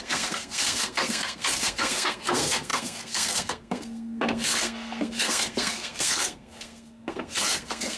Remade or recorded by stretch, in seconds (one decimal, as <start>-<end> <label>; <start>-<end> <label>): 0.0-8.0 remade